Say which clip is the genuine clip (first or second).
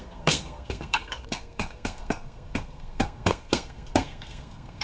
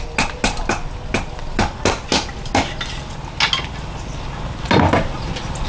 second